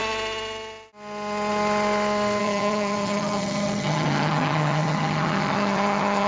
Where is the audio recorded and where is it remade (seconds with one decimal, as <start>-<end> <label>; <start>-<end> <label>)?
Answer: 0.0-2.4 recorded; 2.4-6.3 remade